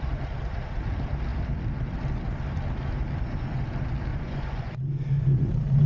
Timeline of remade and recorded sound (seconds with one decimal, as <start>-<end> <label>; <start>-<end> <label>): 0.0-4.1 recorded; 4.1-4.8 remade; 4.8-5.9 recorded